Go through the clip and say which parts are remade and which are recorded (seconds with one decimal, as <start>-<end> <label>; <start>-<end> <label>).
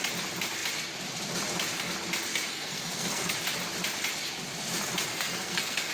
0.0-2.3 recorded; 2.3-3.3 remade; 3.3-5.1 recorded; 5.1-5.9 remade